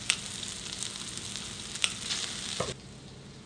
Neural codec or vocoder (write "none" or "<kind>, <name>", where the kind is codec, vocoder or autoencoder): none